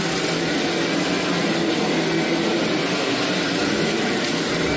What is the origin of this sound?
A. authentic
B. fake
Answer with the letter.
A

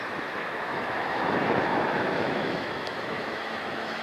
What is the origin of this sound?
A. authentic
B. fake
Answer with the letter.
B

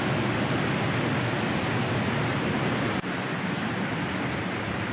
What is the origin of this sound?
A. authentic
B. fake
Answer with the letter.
A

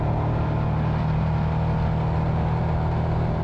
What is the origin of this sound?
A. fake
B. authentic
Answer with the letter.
B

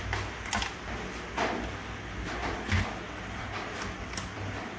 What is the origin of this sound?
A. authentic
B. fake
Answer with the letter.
A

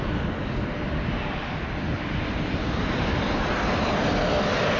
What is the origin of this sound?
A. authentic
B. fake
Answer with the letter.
A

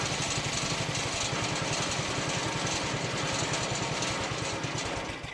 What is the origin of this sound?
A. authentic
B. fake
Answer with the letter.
A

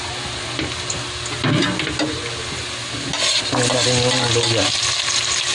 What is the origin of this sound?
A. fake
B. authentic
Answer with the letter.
B